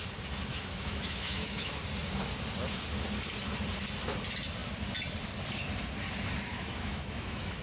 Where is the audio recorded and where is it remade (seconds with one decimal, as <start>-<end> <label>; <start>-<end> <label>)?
0.0-0.5 recorded; 0.5-1.8 remade; 1.8-6.5 recorded; 6.5-7.6 remade